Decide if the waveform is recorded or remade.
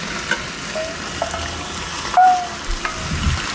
recorded